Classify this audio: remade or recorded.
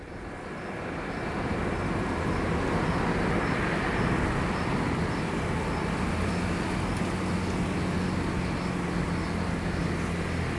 recorded